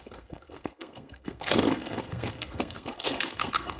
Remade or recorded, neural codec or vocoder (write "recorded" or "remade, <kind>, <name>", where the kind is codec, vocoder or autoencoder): remade, codec, SNAC